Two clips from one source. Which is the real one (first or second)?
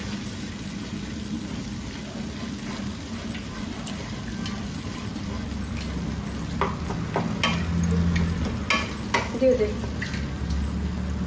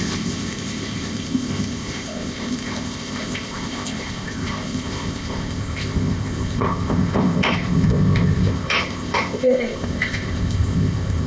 first